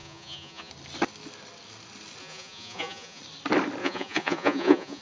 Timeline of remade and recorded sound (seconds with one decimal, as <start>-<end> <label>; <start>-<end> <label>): 0.0-0.7 remade; 0.7-2.2 recorded; 2.2-3.2 remade; 3.2-3.8 recorded; 3.8-5.0 remade